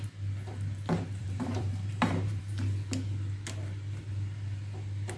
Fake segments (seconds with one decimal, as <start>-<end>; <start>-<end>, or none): 1.2-2.4